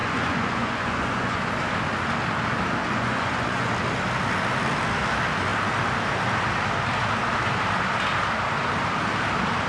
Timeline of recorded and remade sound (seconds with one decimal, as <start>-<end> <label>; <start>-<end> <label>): 0.0-1.5 remade; 1.5-2.8 recorded; 2.8-3.7 remade; 3.7-9.7 recorded